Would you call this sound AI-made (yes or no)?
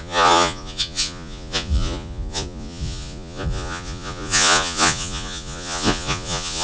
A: yes